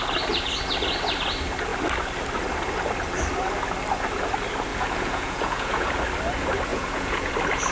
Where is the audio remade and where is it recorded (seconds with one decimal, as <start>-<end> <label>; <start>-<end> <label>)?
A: 0.0-4.7 recorded; 4.7-5.9 remade; 5.9-6.7 recorded; 6.7-7.3 remade; 7.3-7.7 recorded